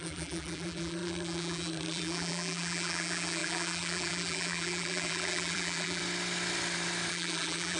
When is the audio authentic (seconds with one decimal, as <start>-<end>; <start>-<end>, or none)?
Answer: 6.0-7.1